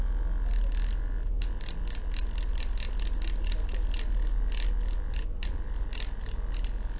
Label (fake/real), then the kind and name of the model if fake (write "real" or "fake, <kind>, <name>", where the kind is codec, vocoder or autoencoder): real